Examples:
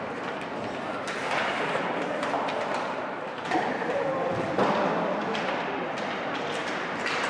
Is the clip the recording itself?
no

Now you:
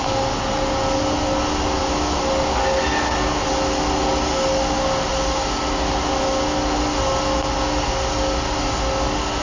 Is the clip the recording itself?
yes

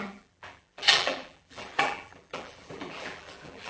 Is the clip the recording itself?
no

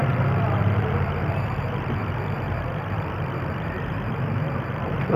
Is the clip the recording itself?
no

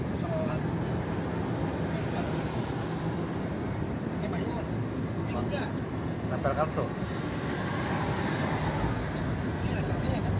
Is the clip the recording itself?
yes